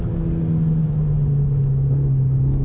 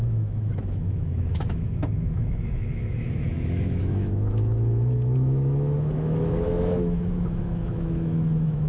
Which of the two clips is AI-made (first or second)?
second